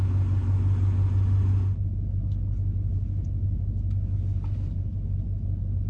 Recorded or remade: recorded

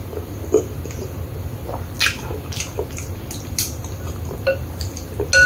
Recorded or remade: recorded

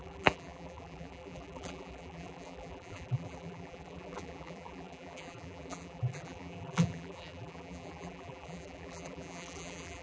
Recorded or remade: remade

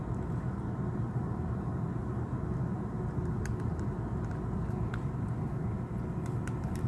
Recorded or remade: recorded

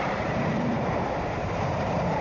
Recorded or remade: remade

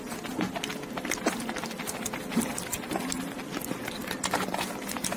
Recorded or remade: recorded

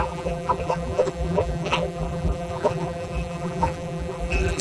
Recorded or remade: remade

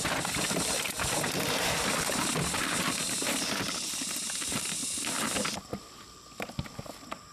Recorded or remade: recorded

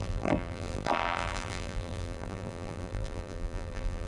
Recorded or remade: remade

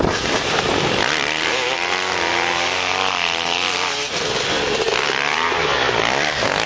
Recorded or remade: remade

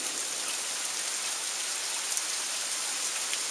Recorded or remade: recorded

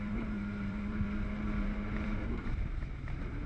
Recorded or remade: remade